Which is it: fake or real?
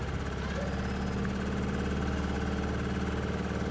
real